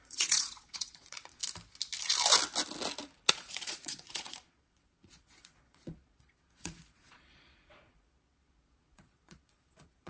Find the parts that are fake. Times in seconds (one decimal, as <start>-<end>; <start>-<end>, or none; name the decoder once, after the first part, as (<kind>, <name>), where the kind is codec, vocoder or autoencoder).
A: 0.0-1.4 (vocoder, Vocos); 3.3-10.1